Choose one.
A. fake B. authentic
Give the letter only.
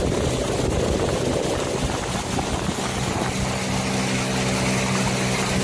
B